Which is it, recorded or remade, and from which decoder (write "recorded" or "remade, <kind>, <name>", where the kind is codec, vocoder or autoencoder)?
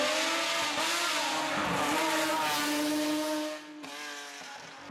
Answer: recorded